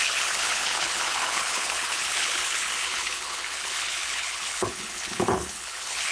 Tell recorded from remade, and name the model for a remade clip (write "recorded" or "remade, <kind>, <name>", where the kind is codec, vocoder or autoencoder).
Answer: remade, codec, HILCodec